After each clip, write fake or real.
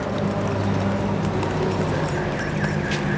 real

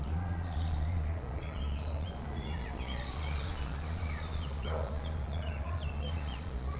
fake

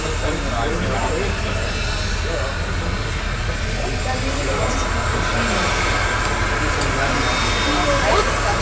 real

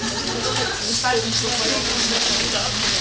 real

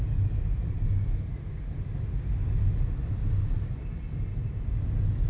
real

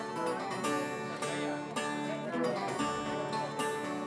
real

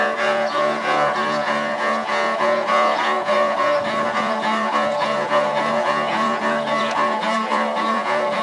fake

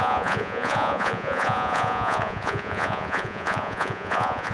fake